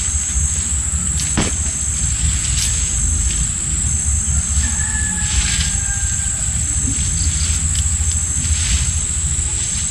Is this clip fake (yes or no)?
no